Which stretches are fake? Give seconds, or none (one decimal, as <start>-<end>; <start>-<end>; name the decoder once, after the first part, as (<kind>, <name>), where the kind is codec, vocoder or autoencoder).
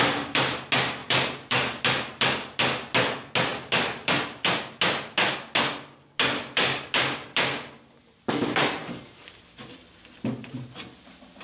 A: 1.0-1.8 (vocoder, BigVGAN v2); 8.0-9.4